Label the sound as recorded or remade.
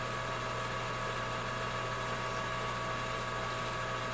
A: recorded